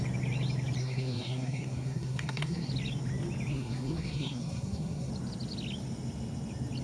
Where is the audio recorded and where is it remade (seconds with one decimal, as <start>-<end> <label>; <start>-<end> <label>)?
0.0-0.8 recorded; 0.8-2.7 remade; 2.7-3.5 recorded; 3.5-5.1 remade; 5.1-6.8 recorded